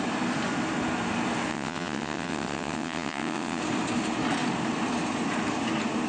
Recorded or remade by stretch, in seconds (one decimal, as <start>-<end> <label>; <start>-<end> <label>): 0.0-1.5 recorded; 1.5-3.6 remade; 3.6-6.1 recorded